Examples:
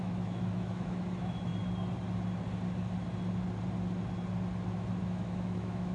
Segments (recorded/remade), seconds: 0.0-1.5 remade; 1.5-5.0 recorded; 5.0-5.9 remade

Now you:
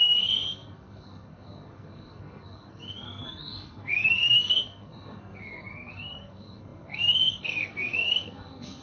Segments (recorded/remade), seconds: 0.0-8.8 remade

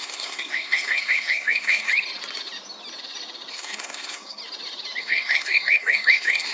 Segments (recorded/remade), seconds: 0.0-1.9 remade; 1.9-3.5 recorded; 3.5-4.4 remade; 4.4-5.0 recorded; 5.0-6.5 remade

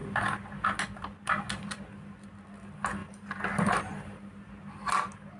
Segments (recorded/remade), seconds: 0.0-5.4 recorded

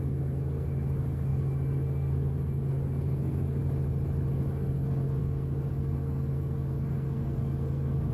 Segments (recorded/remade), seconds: 0.0-3.6 remade; 3.6-4.3 recorded; 4.3-8.1 remade

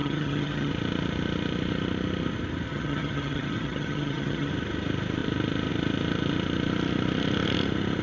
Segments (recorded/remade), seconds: 0.0-0.7 remade; 0.7-2.7 recorded; 2.7-4.5 remade; 4.5-8.0 recorded

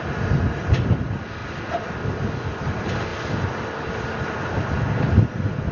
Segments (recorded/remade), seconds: 0.0-1.4 remade; 1.4-1.9 recorded; 1.9-3.1 remade; 3.1-4.2 recorded; 4.2-5.7 remade

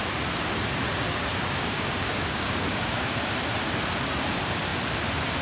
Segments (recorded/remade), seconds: 0.0-1.3 recorded; 1.3-3.1 remade; 3.1-5.4 recorded